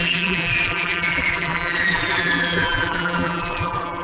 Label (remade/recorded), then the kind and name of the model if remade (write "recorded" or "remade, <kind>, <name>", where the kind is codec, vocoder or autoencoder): remade, vocoder, BigVGAN v2